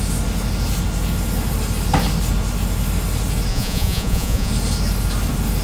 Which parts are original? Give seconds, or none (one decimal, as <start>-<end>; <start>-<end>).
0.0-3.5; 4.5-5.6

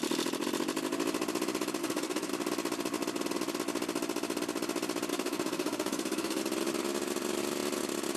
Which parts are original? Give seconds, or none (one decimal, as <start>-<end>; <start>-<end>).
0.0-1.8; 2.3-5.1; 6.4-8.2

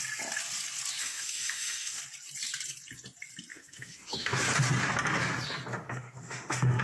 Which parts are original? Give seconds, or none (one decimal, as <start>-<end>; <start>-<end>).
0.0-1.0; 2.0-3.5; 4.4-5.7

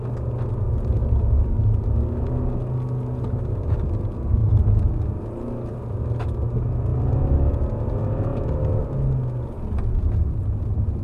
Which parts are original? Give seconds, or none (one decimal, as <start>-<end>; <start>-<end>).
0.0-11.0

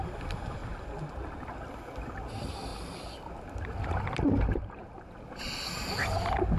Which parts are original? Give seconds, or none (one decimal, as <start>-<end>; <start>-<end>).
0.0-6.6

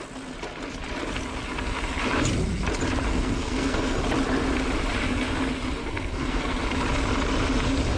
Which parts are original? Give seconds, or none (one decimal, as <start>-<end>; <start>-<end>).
0.0-3.1; 4.0-5.8; 6.6-8.0